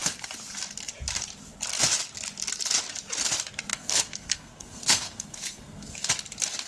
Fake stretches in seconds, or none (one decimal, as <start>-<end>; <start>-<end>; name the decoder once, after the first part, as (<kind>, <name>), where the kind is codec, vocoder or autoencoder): 3.7-6.1 (codec, SNAC)